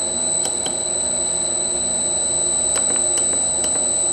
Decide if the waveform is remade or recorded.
recorded